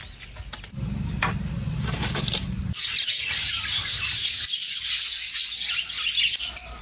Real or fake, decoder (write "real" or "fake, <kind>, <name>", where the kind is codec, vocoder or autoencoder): real